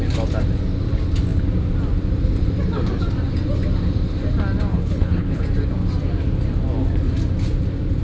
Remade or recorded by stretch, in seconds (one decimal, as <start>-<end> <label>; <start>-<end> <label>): 0.0-4.7 recorded; 4.7-5.4 remade; 5.4-8.0 recorded

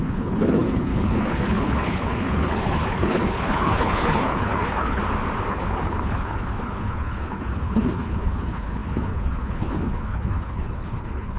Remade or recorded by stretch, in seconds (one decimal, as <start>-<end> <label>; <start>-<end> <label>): 0.0-5.0 remade; 5.0-5.5 recorded; 5.5-11.4 remade

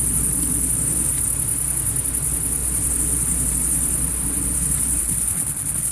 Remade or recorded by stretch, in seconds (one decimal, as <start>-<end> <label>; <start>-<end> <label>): 0.0-5.0 recorded; 5.0-5.9 remade

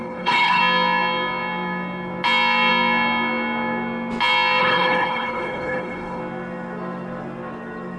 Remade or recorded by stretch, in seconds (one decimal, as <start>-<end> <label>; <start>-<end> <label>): 0.0-0.6 remade; 0.6-4.6 recorded; 4.6-6.2 remade; 6.2-8.0 recorded

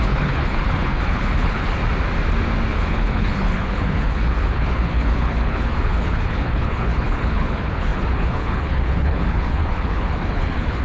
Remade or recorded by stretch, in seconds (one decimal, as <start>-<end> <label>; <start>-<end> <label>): 0.0-1.8 remade; 1.8-2.7 recorded; 2.7-10.8 remade

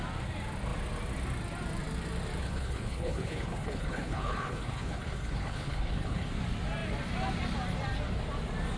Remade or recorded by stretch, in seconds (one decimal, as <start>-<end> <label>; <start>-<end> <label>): 0.0-2.4 recorded; 2.4-6.3 remade; 6.3-8.8 recorded